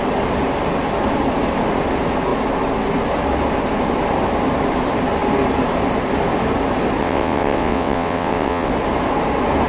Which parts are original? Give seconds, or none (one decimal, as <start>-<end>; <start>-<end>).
0.0-7.0; 8.7-9.7